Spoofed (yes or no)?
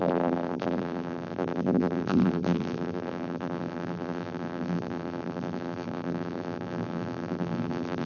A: yes